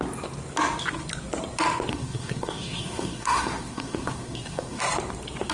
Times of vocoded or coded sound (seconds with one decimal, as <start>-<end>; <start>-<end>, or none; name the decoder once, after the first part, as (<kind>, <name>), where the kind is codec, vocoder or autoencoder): 1.9-4.8 (codec, SNAC)